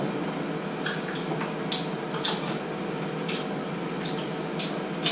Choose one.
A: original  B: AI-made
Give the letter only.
A